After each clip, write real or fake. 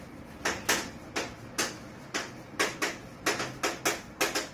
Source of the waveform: real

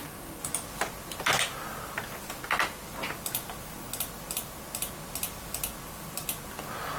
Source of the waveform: real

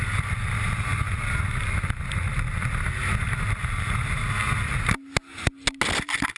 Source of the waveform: real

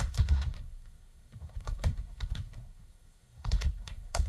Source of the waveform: fake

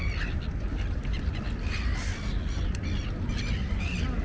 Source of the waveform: real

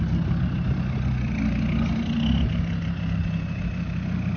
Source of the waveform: real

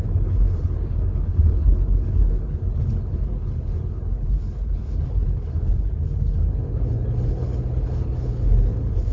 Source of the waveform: fake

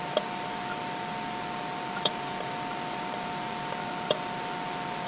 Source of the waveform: real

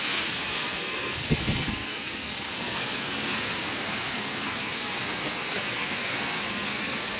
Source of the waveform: fake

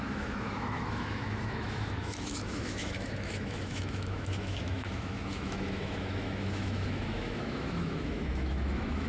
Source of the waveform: fake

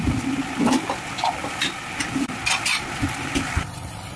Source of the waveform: real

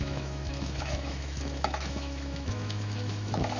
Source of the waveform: fake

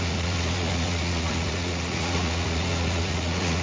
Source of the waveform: fake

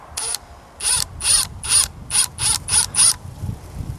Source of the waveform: fake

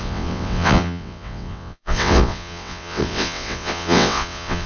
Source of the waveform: fake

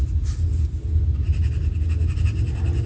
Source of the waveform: real